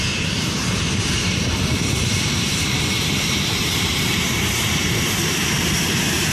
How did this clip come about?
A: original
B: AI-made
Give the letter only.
B